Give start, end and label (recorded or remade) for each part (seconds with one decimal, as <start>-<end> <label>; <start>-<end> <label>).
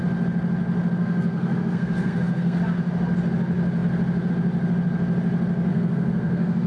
0.0-1.0 recorded; 1.0-2.6 remade; 2.6-5.7 recorded; 5.7-6.7 remade